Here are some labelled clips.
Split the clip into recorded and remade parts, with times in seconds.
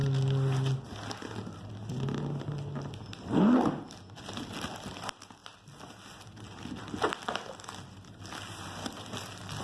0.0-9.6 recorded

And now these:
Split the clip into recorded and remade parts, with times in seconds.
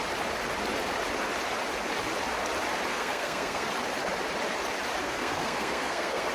0.0-2.9 recorded; 2.9-3.7 remade; 3.7-5.0 recorded; 5.0-6.3 remade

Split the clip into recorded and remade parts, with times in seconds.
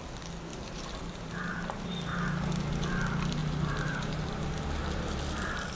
0.0-0.5 recorded; 0.5-1.5 remade; 1.5-3.4 recorded; 3.4-5.0 remade; 5.0-5.8 recorded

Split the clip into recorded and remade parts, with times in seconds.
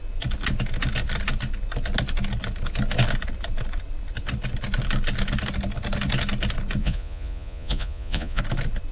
0.0-6.8 recorded; 6.8-8.4 remade; 8.4-8.9 recorded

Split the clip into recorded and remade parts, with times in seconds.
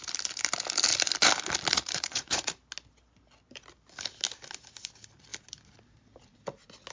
0.0-1.7 recorded; 1.7-2.5 remade; 2.5-6.9 recorded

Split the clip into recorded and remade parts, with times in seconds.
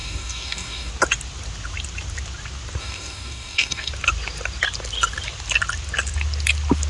0.0-0.9 remade; 0.9-2.8 recorded; 2.8-3.9 remade; 3.9-6.9 recorded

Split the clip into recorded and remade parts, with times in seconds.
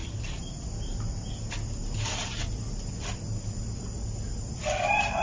0.0-0.6 remade; 0.6-5.2 recorded